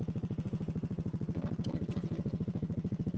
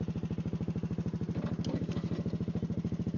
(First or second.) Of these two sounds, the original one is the second